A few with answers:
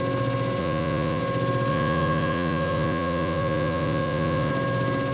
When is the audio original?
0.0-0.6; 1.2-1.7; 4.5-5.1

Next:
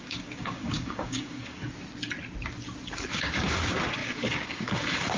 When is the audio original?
1.6-3.1

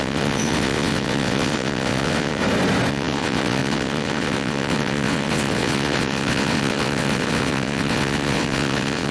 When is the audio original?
2.4-2.9

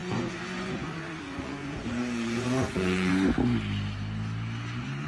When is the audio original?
3.1-5.1

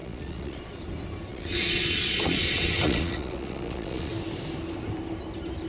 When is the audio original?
0.8-1.3; 4.1-5.7

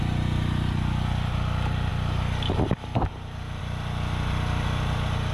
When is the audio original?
0.0-5.3

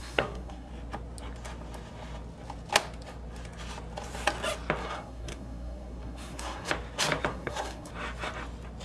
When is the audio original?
0.7-4.8; 6.7-7.3; 7.9-8.8